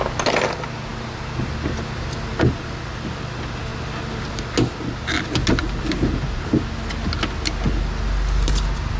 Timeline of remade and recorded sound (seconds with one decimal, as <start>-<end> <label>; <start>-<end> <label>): 0.0-9.0 recorded